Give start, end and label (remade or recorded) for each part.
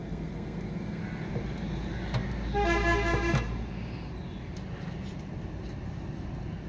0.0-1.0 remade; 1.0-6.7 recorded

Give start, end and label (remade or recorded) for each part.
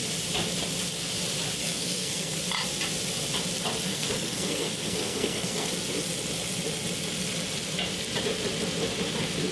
0.0-1.6 recorded; 1.6-2.4 remade; 2.4-3.9 recorded; 3.9-5.7 remade; 5.7-9.5 recorded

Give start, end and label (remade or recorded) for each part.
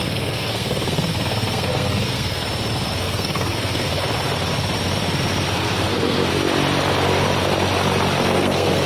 0.0-2.4 remade; 2.4-3.0 recorded; 3.0-3.9 remade; 3.9-5.5 recorded; 5.5-6.3 remade; 6.3-8.2 recorded; 8.2-8.9 remade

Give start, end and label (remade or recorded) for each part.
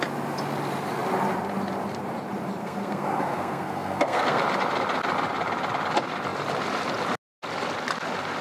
0.0-2.6 recorded; 2.6-4.4 remade; 4.4-8.4 recorded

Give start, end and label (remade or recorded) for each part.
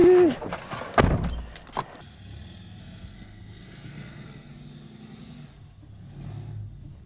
0.0-2.8 recorded; 2.8-4.5 remade; 4.5-7.1 recorded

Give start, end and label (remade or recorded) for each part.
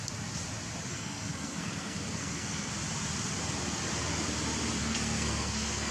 0.0-0.9 recorded; 0.9-2.7 remade; 2.7-4.8 recorded; 4.8-5.9 remade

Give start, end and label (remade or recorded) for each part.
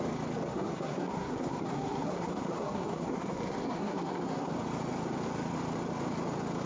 0.0-0.5 recorded; 0.5-4.5 remade; 4.5-6.7 recorded